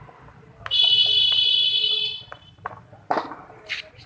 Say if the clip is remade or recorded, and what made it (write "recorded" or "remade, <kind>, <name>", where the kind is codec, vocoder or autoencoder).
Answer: recorded